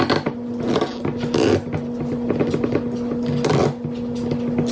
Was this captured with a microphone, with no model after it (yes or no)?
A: yes